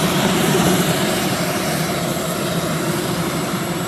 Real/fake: fake